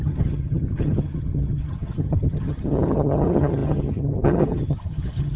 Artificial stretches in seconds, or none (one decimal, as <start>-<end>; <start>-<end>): 0.0-5.4